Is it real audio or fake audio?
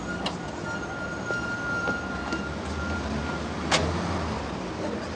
real